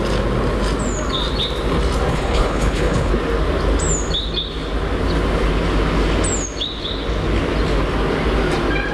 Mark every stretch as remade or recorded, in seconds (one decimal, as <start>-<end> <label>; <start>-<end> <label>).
0.0-2.1 recorded; 2.1-3.1 remade; 3.1-8.9 recorded